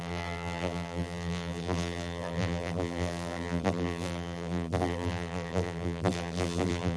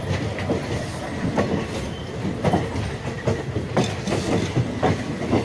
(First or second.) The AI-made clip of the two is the first